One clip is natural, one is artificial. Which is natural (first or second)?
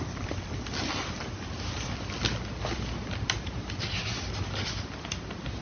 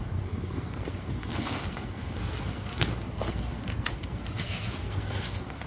first